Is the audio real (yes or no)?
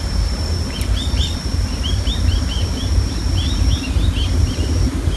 no